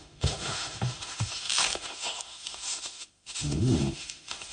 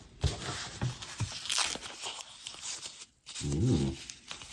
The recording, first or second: second